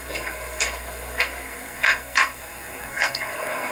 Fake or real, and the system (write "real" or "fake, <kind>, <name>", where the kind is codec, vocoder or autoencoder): fake, codec, SNAC